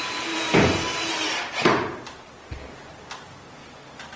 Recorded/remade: remade